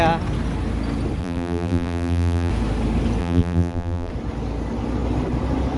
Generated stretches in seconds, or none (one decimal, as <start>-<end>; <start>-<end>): 1.2-2.5; 3.2-4.1